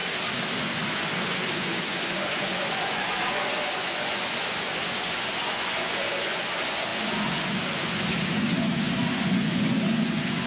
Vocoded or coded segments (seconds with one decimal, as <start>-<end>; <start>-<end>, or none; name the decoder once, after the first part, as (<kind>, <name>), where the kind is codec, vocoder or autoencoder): 0.6-10.5 (vocoder, Vocos)